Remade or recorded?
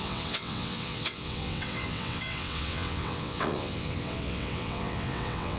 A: remade